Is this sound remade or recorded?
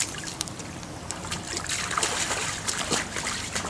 remade